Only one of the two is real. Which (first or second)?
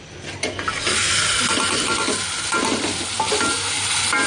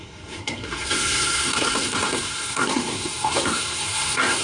first